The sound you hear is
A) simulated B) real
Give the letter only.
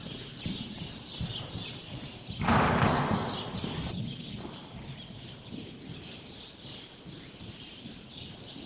A